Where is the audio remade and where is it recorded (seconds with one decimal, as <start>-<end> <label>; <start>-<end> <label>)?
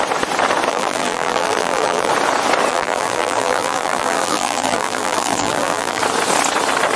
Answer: 0.0-0.7 recorded; 0.7-2.1 remade; 2.1-2.7 recorded; 2.7-6.0 remade; 6.0-7.0 recorded